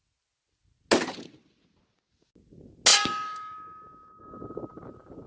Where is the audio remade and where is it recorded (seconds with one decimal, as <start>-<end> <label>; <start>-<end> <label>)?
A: 0.0-2.9 recorded; 2.9-4.2 remade; 4.2-5.3 recorded